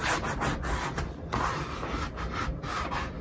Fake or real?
real